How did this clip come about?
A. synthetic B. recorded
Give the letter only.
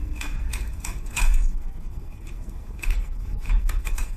A